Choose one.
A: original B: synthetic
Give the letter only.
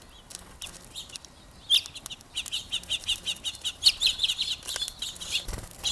A